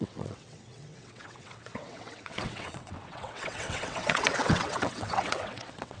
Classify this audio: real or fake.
fake